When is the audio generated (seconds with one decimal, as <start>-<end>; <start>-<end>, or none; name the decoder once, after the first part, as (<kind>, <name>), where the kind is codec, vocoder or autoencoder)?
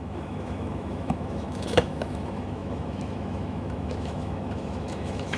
0.0-5.4 (autoencoder, DAC-VAE)